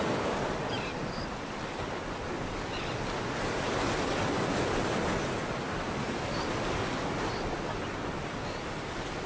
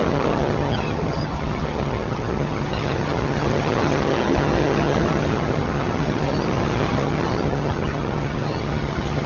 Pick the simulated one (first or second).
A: second